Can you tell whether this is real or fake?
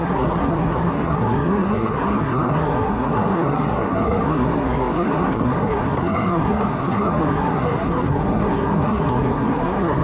fake